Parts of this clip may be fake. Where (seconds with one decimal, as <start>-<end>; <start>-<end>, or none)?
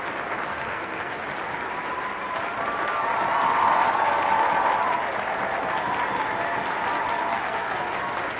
0.5-1.2; 7.3-7.8